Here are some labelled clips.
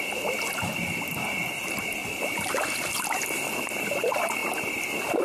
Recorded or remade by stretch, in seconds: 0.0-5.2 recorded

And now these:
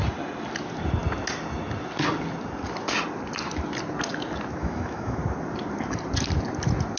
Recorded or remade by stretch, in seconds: 0.0-4.6 recorded; 4.6-5.2 remade; 5.2-7.0 recorded

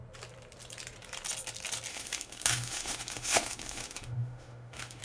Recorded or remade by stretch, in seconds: 0.0-1.9 recorded; 1.9-5.0 remade